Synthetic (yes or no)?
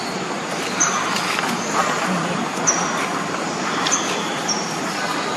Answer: no